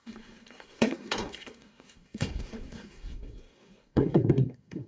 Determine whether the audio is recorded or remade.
remade